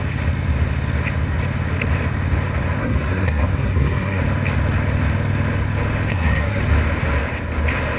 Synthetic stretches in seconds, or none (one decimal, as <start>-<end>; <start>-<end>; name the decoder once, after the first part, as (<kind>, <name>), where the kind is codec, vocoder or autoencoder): 2.8-4.2 (codec, SNAC); 6.1-6.6